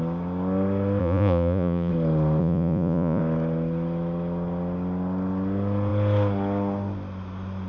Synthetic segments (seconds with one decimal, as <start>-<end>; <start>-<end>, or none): 1.0-1.9; 2.4-3.2